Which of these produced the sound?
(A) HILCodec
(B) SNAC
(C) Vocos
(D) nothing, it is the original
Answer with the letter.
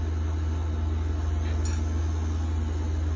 D